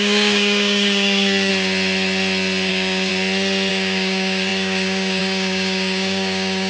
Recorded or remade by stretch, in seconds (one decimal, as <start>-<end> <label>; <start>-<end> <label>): 0.0-1.5 remade; 1.5-2.7 recorded; 2.7-3.1 remade; 3.1-3.7 recorded; 3.7-6.7 remade